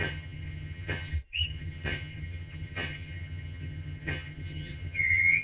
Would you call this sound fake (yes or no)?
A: yes